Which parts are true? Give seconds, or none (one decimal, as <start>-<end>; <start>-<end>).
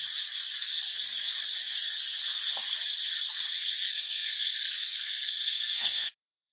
0.0-3.9